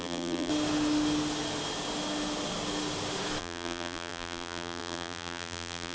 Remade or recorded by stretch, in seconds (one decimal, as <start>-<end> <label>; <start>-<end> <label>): 0.0-0.5 remade; 0.5-3.4 recorded; 3.4-5.9 remade